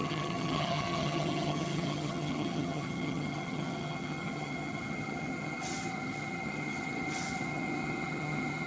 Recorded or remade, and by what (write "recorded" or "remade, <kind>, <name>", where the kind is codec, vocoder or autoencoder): remade, vocoder, HiFi-GAN